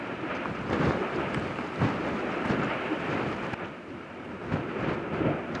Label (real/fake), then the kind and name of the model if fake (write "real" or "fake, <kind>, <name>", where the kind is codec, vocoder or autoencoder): fake, vocoder, BigVGAN v2